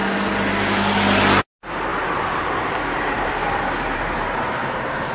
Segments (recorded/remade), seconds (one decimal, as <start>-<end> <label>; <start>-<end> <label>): 0.0-1.9 recorded; 1.9-5.1 remade